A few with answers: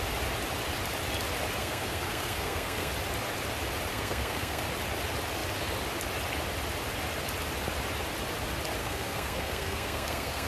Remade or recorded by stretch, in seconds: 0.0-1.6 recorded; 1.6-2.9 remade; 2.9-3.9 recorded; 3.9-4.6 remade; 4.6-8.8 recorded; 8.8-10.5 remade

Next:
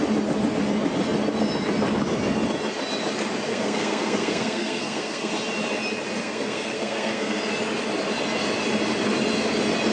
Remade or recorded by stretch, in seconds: 0.0-3.5 recorded; 3.5-5.3 remade; 5.3-6.2 recorded; 6.2-7.4 remade; 7.4-9.9 recorded

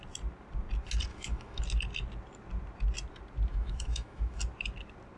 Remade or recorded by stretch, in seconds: 0.0-1.1 recorded; 1.1-1.6 remade; 1.6-3.5 recorded; 3.5-4.4 remade; 4.4-5.2 recorded

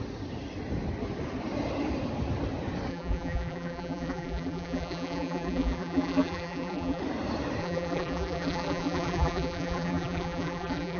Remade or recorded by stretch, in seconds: 0.0-2.9 recorded; 2.9-7.0 remade; 7.0-7.6 recorded; 7.6-11.0 remade

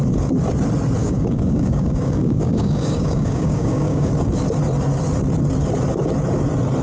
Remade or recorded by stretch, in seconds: 0.0-1.0 recorded; 1.0-4.1 remade; 4.1-6.8 recorded

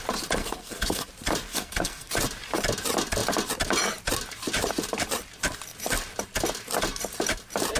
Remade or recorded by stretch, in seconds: 0.0-0.4 recorded; 0.4-1.1 remade; 1.1-1.5 recorded; 1.5-2.1 remade; 2.1-7.8 recorded

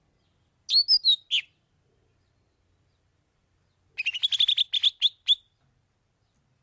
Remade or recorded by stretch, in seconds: 0.0-6.6 recorded